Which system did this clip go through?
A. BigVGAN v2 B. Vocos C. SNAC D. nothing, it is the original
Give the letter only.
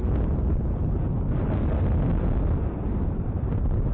D